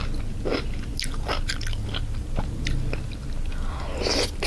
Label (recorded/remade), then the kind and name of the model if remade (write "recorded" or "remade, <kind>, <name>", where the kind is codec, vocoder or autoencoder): recorded